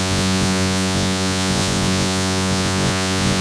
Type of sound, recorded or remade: remade